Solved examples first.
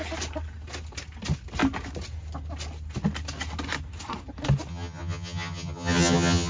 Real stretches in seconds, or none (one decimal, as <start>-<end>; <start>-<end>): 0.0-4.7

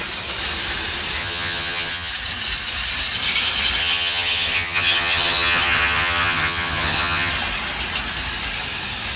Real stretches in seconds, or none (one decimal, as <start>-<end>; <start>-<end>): 0.0-1.2; 2.1-3.8; 7.3-9.2

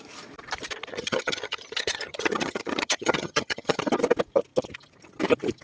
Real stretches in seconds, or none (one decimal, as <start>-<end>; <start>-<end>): 0.0-0.9; 3.8-5.6

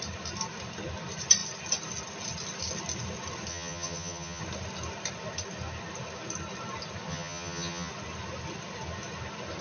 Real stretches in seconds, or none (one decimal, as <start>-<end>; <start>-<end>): 0.0-3.5; 4.4-7.1; 7.9-9.6